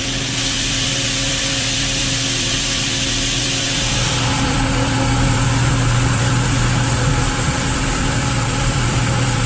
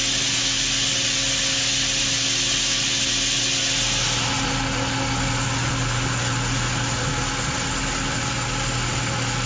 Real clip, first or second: second